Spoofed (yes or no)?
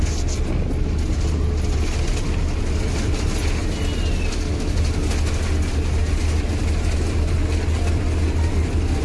no